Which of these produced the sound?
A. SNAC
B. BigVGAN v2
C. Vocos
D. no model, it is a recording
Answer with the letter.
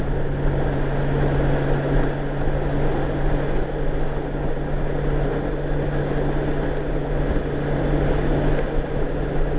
D